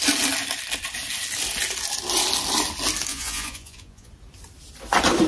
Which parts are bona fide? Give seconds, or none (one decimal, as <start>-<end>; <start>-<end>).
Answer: 0.0-3.1; 4.1-5.3